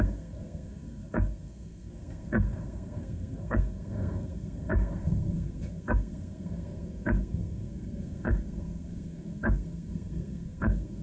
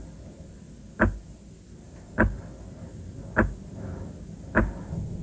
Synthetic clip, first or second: first